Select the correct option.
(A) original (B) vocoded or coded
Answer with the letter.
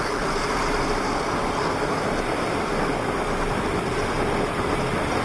A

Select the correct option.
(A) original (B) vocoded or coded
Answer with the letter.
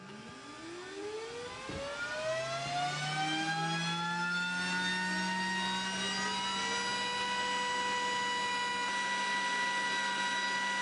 A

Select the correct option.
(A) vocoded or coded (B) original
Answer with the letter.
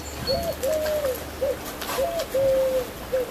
B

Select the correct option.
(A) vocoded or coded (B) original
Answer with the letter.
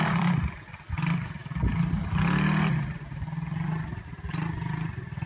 B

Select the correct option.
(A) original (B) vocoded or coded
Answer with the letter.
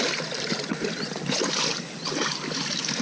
A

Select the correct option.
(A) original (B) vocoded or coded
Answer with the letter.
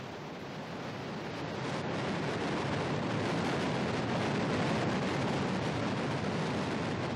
A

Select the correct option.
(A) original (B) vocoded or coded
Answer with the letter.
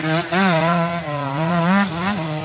B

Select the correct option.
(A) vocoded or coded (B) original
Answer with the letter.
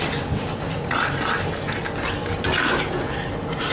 B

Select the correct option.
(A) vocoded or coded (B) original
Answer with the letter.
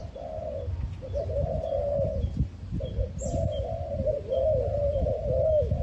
B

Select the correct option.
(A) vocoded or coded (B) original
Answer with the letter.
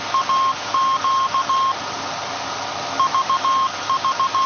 B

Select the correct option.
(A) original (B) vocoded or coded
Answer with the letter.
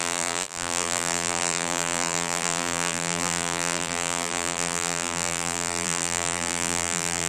B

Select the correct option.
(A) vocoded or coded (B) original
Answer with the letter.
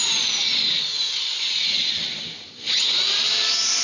B